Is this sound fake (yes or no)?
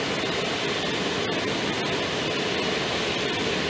no